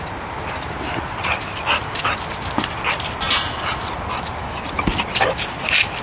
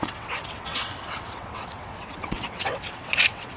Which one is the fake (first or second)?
second